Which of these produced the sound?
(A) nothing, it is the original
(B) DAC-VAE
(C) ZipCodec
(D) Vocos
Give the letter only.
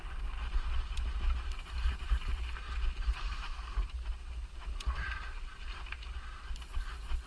A